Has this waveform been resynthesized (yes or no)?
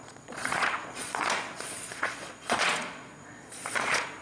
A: yes